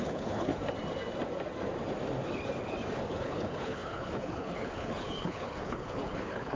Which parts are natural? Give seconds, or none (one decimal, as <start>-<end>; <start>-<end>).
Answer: 0.5-3.1